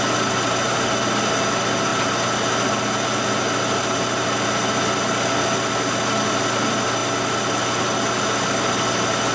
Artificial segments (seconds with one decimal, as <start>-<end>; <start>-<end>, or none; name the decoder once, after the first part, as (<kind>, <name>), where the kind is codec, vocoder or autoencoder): none